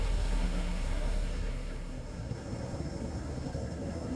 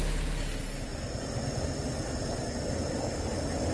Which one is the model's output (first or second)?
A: first